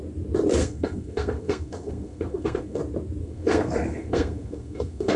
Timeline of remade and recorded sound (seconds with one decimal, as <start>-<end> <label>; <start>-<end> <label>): 0.0-0.6 recorded; 0.6-2.8 remade; 2.8-3.2 recorded; 3.2-5.2 remade